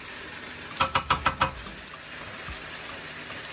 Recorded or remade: recorded